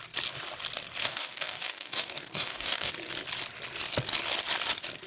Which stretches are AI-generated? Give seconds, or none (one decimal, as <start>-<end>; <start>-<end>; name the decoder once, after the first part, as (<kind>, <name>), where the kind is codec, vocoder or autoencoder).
1.0-2.9 (codec, DAC)